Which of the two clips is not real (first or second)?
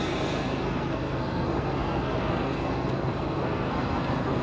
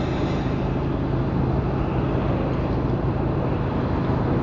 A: first